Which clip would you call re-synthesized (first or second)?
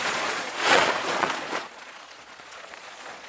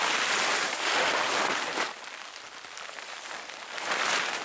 first